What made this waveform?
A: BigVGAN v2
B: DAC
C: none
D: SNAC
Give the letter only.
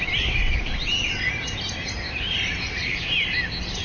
C